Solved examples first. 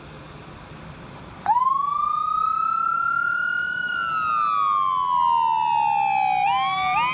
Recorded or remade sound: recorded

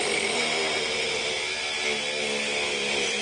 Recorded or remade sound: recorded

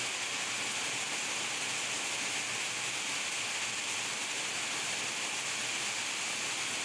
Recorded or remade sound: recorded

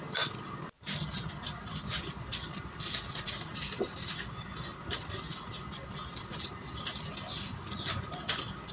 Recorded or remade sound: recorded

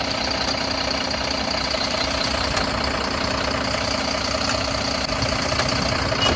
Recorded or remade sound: recorded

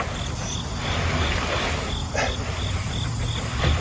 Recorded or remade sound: recorded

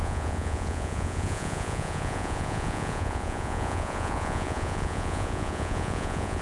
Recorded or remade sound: remade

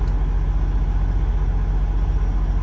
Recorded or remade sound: recorded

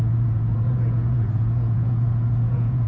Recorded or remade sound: remade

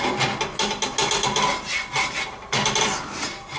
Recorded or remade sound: recorded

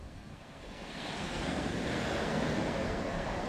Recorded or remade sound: remade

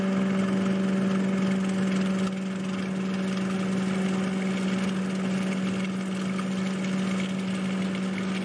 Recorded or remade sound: recorded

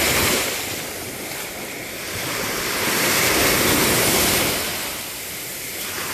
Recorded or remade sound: recorded